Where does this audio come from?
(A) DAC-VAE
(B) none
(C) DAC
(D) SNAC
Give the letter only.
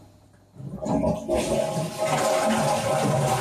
B